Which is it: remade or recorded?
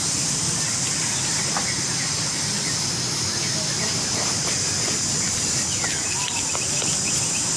recorded